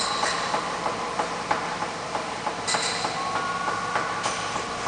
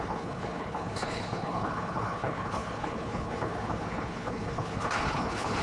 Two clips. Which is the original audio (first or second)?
first